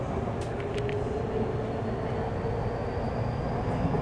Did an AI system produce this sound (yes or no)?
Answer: no